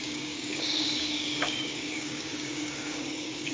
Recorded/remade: remade